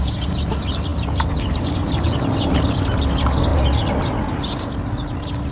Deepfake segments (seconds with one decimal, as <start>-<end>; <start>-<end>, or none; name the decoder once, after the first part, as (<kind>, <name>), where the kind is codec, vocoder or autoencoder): none